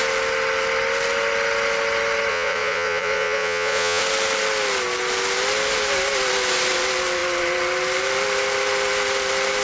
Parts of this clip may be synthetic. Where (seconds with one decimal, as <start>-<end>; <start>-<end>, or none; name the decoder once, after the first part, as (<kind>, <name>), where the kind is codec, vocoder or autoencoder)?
2.3-4.0 (vocoder, Vocos)